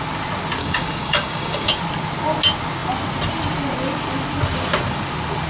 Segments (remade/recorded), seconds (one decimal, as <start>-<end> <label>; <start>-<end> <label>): 0.0-0.6 recorded; 0.6-1.8 remade; 1.8-5.5 recorded